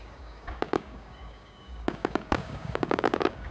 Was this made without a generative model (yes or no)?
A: no